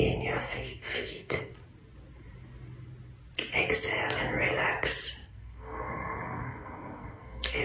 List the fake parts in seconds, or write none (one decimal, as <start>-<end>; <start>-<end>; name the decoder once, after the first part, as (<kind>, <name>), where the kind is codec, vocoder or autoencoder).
0.4-1.5 (codec, SNAC); 5.2-7.6